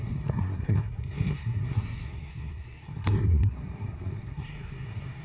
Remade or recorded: remade